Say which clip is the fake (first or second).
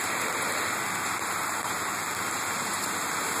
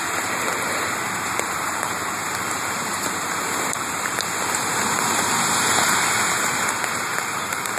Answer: second